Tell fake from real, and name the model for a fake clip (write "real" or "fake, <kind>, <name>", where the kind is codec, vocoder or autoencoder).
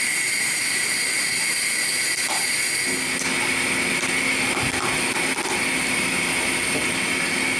real